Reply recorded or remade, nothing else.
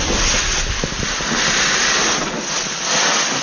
recorded